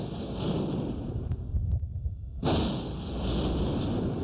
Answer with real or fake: real